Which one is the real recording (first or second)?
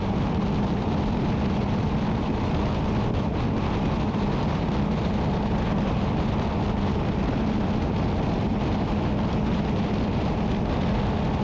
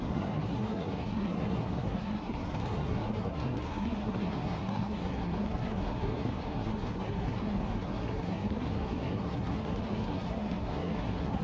first